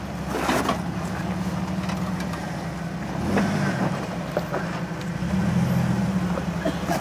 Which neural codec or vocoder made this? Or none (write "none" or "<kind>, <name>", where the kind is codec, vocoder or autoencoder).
none